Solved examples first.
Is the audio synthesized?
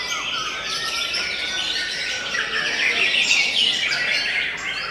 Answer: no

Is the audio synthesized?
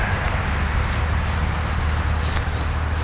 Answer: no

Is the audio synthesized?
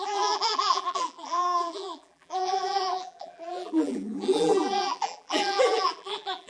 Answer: yes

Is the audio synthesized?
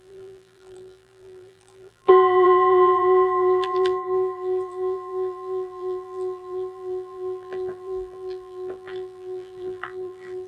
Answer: yes